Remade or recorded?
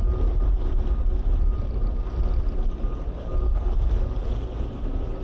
recorded